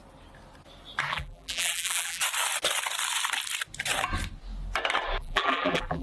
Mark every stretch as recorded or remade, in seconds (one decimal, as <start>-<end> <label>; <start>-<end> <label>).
0.0-1.1 recorded; 1.1-2.2 remade; 2.2-5.2 recorded; 5.2-6.0 remade